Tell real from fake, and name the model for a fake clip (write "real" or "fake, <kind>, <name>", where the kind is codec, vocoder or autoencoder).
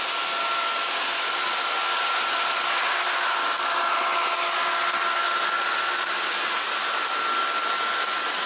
real